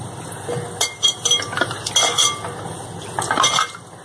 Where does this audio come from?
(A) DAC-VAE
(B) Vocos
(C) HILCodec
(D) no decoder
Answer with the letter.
D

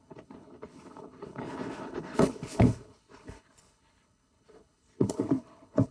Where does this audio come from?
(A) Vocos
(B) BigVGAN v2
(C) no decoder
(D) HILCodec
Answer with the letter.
D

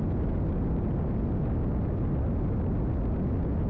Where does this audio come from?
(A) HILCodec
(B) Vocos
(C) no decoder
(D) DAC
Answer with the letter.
C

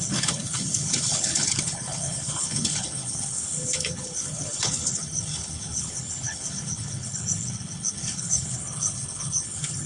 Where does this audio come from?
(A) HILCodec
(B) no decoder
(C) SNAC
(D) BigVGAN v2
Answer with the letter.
A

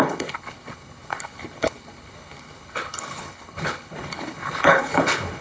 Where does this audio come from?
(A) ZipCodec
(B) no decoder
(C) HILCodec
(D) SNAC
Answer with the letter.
C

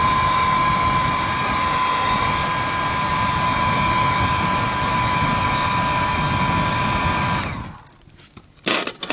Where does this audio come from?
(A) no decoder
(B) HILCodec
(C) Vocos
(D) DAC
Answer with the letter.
A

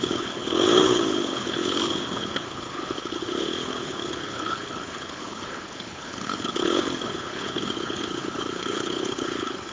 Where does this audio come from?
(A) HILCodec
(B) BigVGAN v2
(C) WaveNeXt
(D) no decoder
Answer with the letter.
A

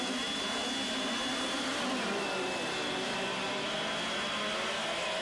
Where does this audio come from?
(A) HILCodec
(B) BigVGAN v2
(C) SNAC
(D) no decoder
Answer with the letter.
D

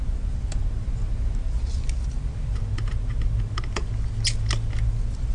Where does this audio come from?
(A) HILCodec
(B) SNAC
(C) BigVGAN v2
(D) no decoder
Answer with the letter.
D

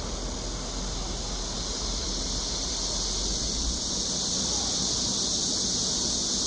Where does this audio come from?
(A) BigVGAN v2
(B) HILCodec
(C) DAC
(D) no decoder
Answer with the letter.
D